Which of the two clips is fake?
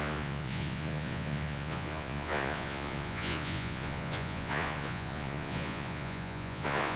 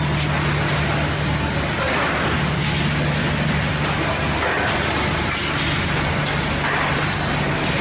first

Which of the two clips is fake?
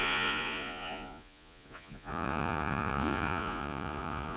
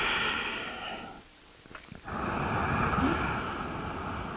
first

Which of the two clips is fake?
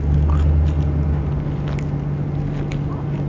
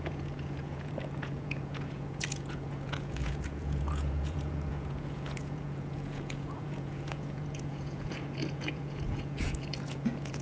second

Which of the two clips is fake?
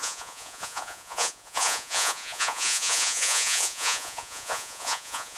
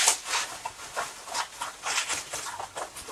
first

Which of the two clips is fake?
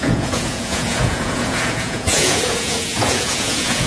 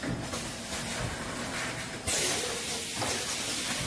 first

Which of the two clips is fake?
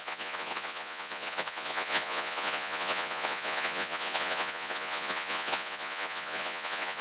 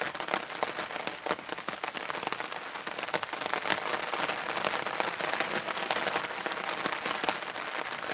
first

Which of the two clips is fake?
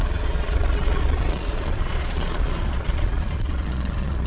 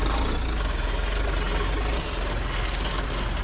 first